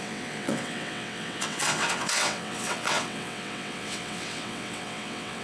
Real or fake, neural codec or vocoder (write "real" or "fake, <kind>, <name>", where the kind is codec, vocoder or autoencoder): fake, vocoder, WaveNeXt